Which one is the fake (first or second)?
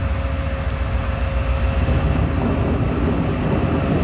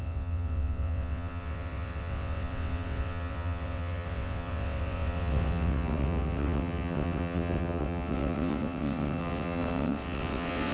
second